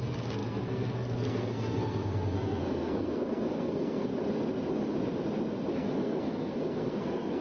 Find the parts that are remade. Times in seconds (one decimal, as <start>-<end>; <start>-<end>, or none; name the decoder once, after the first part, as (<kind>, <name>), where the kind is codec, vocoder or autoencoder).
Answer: 0.0-4.1 (codec, SNAC); 5.7-7.4